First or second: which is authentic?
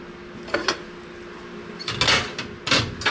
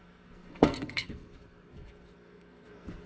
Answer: first